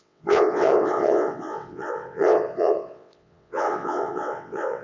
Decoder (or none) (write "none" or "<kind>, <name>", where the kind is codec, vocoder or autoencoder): vocoder, WaveNeXt